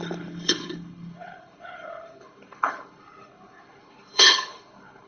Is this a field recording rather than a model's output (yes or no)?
no